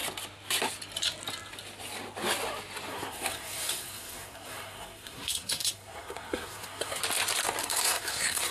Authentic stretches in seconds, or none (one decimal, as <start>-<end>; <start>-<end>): 0.0-2.9; 7.0-7.6